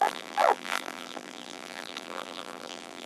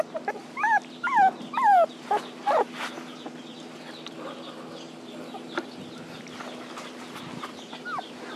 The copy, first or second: first